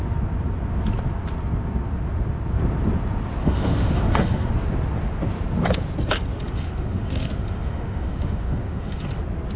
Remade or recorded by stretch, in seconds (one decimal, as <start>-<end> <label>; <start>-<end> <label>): 0.0-3.4 recorded; 3.4-4.5 remade; 4.5-6.3 recorded; 6.3-9.2 remade; 9.2-9.6 recorded